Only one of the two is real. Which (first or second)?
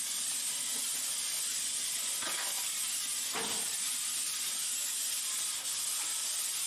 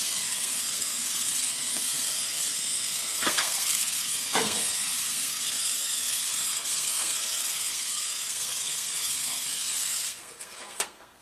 first